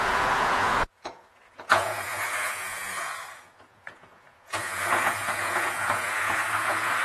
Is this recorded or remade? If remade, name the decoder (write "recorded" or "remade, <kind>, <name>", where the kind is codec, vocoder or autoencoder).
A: remade, vocoder, Vocos